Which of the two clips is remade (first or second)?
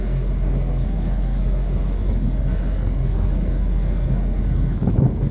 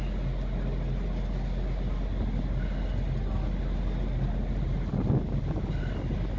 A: first